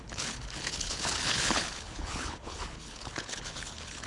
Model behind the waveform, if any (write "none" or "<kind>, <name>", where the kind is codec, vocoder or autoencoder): codec, HILCodec